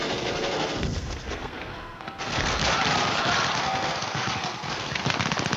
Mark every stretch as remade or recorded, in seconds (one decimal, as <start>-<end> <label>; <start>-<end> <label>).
0.0-2.6 remade; 2.6-3.6 recorded; 3.6-5.0 remade; 5.0-5.6 recorded